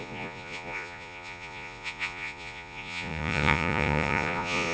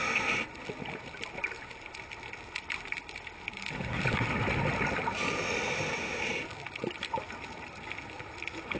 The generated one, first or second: first